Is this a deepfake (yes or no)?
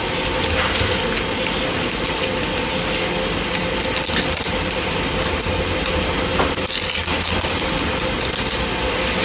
no